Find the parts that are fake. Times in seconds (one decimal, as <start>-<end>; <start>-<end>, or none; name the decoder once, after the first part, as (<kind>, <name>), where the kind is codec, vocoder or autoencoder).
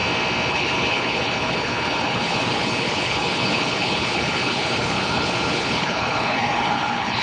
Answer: 0.5-7.2 (codec, HILCodec)